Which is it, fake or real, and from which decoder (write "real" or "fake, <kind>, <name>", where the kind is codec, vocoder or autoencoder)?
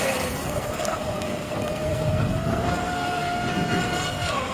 fake, codec, SNAC